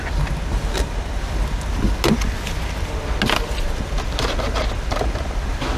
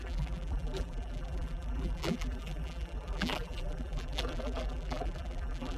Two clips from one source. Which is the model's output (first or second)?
second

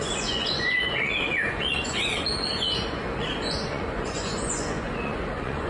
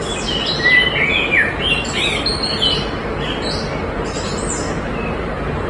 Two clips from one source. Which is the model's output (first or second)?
first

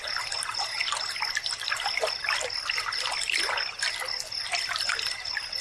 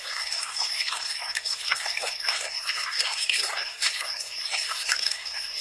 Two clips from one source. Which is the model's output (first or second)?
second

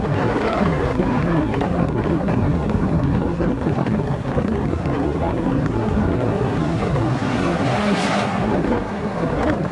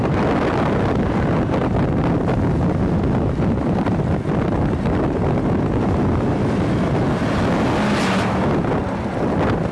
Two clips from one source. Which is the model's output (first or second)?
first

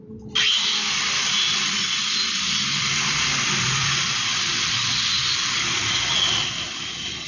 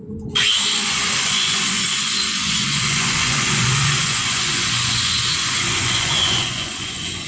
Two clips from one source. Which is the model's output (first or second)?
second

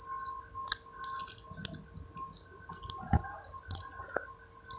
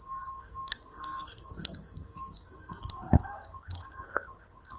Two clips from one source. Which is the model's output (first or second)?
second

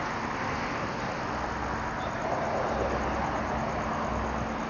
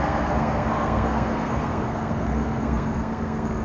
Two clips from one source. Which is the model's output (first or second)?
second